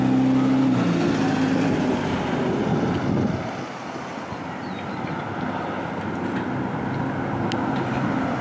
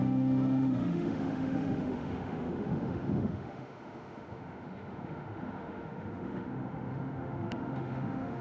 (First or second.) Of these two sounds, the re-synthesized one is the second